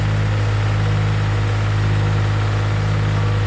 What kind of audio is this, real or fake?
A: real